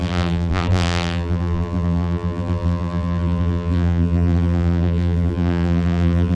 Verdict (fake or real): fake